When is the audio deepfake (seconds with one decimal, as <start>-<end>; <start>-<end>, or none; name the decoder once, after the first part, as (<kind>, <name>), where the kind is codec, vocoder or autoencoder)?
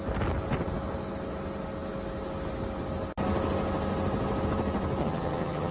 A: 5.0-5.7 (vocoder, HiFi-GAN)